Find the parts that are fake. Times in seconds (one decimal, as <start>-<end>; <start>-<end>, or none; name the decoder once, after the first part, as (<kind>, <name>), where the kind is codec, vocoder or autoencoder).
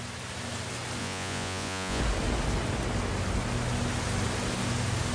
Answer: 1.0-2.0 (vocoder, Vocos)